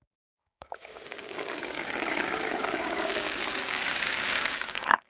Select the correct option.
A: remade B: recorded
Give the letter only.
A